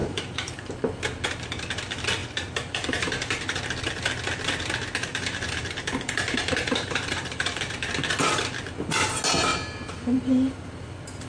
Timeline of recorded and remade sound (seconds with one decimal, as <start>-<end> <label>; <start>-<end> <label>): 0.0-0.7 remade; 0.7-2.2 recorded; 2.2-3.9 remade; 3.9-5.1 recorded; 5.1-7.9 remade; 7.9-9.5 recorded; 9.5-10.5 remade; 10.5-11.3 recorded